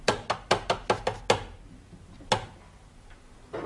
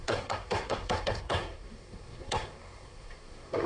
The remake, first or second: second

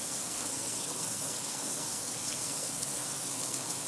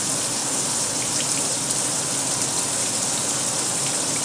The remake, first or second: first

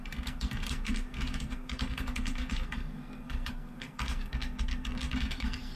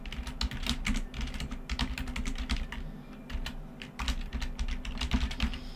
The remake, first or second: first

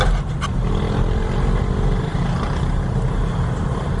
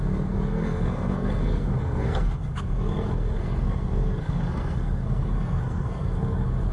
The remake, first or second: second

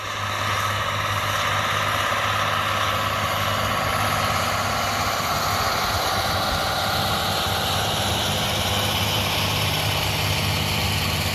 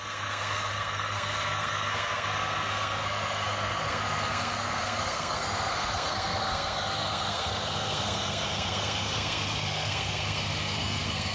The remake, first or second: second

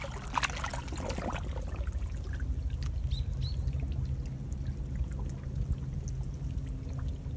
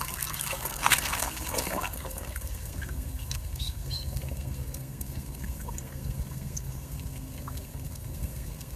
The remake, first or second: second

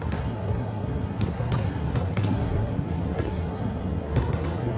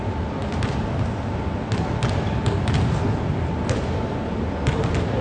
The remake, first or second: first